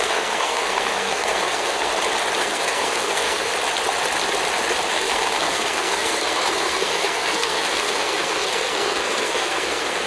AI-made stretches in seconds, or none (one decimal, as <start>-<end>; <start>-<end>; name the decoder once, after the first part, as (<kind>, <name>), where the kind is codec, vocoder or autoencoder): 0.0-1.9 (codec, SNAC); 2.4-3.5; 4.9-10.1